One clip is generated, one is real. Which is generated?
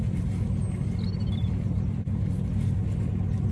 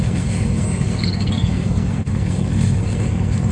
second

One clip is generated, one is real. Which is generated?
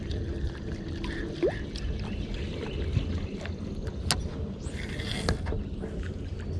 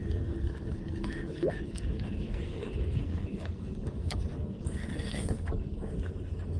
second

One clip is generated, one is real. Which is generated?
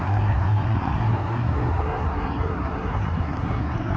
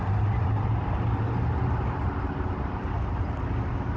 first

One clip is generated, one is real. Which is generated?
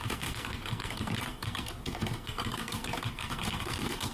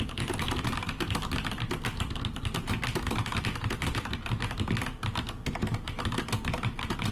first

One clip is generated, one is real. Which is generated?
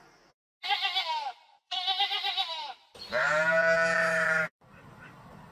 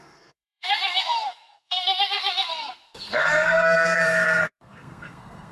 second